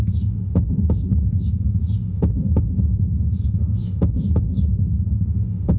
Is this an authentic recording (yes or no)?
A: no